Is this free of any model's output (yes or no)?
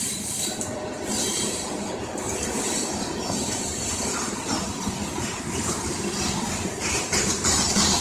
no